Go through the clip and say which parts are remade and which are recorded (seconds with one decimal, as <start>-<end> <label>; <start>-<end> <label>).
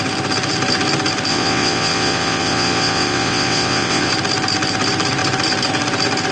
0.0-1.3 recorded; 1.3-4.1 remade; 4.1-6.3 recorded